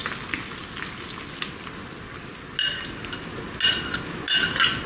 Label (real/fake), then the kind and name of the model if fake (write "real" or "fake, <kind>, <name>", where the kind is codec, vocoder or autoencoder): real